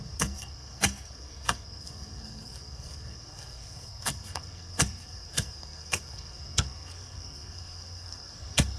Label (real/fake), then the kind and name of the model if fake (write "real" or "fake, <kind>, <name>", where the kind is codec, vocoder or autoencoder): fake, codec, SNAC